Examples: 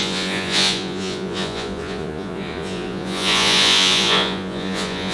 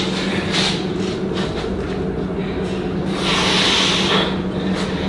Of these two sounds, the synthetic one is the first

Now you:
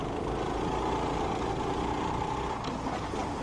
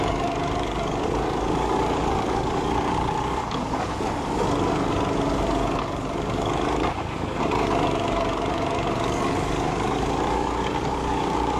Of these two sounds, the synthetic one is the second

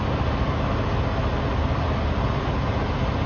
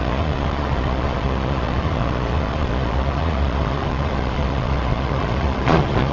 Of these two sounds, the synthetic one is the second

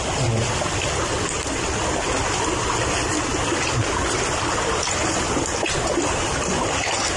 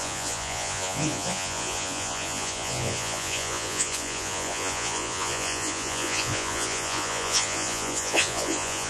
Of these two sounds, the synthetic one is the second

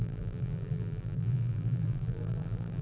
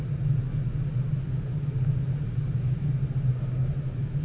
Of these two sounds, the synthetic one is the first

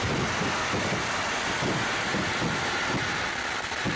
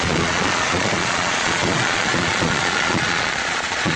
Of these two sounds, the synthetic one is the second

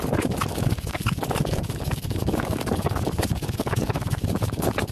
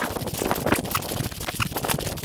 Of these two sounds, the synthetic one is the first